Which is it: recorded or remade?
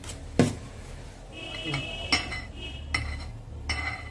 recorded